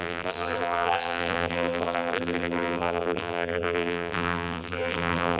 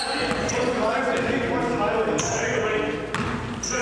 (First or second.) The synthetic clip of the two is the first